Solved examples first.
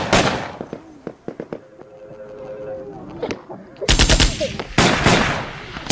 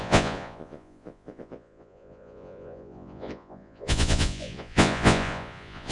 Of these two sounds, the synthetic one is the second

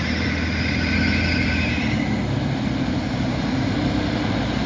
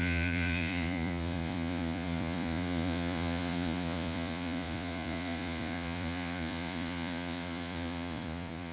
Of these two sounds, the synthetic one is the second